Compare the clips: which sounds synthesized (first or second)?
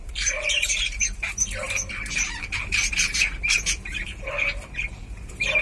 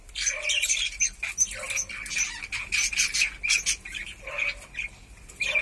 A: first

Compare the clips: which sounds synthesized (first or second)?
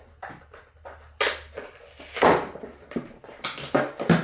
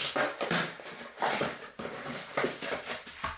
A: second